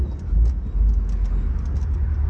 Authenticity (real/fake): real